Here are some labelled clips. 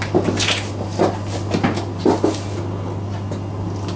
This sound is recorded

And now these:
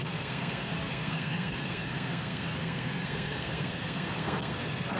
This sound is remade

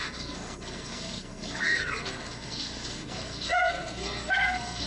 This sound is remade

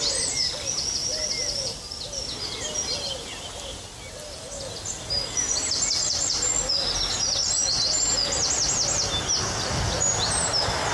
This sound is recorded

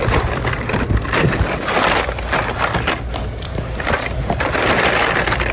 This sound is recorded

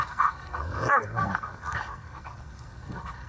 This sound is remade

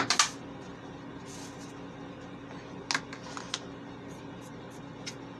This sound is recorded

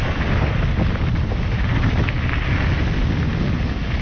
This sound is recorded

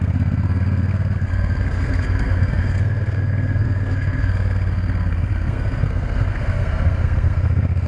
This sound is remade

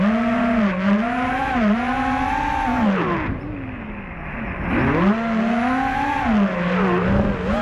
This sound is recorded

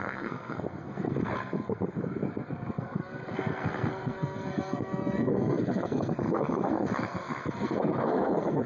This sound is remade